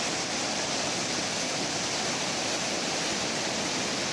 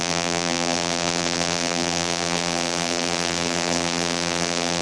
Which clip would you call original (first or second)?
first